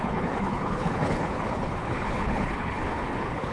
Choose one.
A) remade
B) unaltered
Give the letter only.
A